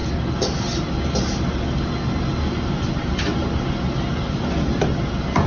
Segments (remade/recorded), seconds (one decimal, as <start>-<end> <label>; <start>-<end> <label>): 0.0-5.5 recorded